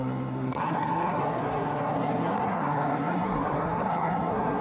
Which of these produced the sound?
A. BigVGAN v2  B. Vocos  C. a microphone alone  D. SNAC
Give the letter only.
D